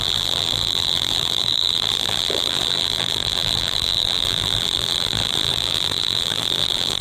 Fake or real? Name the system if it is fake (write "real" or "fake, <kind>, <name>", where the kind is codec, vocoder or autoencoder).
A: fake, vocoder, BigVGAN v2